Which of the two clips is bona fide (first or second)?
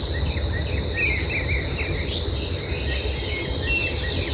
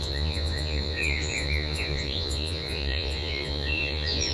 first